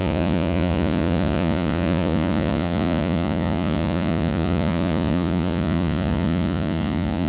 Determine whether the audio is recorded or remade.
remade